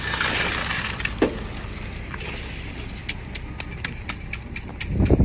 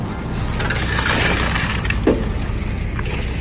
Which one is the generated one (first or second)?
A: first